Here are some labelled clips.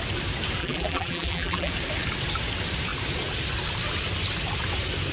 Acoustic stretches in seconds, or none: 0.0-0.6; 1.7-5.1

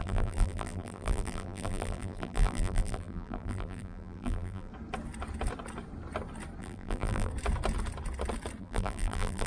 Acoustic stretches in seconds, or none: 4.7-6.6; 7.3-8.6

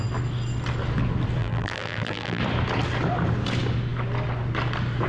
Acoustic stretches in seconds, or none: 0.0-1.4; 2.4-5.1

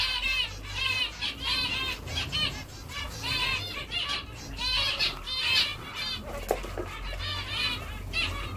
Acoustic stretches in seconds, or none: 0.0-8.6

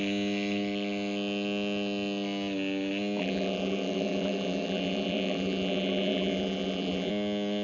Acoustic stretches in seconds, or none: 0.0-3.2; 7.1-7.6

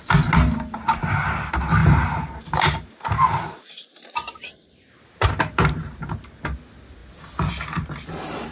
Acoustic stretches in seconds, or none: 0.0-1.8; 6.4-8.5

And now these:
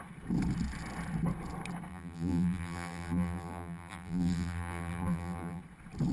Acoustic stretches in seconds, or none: 0.0-1.9; 5.6-6.1

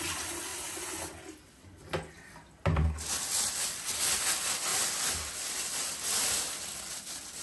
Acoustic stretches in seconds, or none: 0.0-7.4